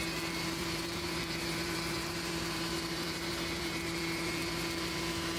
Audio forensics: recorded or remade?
remade